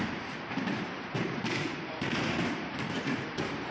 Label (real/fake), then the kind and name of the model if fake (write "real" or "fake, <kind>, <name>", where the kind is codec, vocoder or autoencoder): fake, vocoder, BigVGAN v2